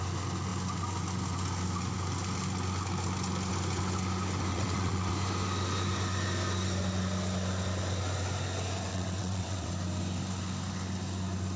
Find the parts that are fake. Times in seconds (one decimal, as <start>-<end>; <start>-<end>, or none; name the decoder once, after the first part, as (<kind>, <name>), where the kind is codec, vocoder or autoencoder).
4.5-5.1 (vocoder, WaveNeXt); 8.9-9.7

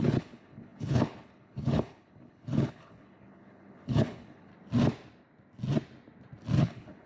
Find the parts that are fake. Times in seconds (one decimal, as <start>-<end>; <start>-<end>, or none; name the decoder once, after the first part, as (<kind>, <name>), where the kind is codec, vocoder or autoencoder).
0.0-4.5 (codec, HILCodec); 6.6-7.1

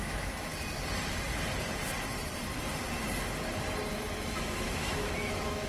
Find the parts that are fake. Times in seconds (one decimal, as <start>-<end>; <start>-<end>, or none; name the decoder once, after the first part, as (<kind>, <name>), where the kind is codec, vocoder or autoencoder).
0.0-0.5 (autoencoder, DAC-VAE); 3.9-5.7

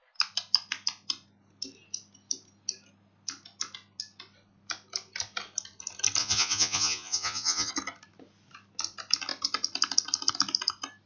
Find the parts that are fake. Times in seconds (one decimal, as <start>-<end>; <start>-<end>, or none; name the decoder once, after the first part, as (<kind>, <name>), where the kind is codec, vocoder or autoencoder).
6.2-7.7 (vocoder, Vocos)